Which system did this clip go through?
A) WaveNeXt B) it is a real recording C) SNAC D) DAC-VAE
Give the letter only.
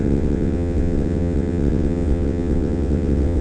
A